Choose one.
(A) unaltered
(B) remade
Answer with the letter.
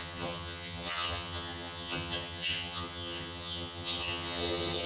B